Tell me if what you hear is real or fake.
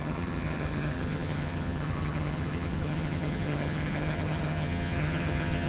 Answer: fake